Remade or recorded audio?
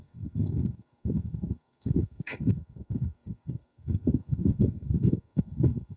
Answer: remade